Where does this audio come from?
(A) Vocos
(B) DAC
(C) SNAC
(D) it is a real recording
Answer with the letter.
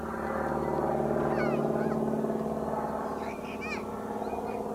D